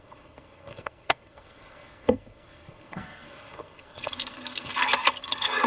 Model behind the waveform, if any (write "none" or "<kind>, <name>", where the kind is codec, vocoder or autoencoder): codec, SNAC